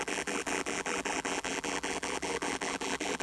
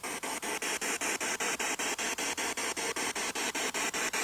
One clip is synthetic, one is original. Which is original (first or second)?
second